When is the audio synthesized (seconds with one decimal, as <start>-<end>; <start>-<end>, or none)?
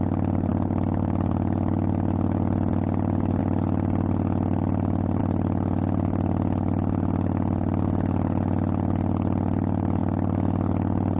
none